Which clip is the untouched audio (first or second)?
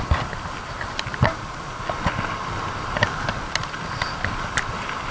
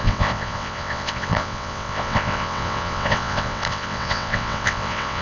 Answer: first